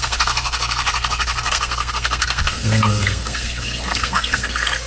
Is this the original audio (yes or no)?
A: no